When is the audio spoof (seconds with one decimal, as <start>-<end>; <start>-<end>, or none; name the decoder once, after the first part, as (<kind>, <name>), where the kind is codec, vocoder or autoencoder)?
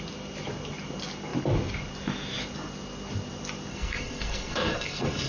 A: 3.7-5.3 (codec, SNAC)